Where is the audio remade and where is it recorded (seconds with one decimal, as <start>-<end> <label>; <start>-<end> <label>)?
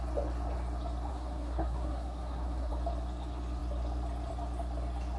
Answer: 0.0-1.1 recorded; 1.1-2.7 remade; 2.7-5.2 recorded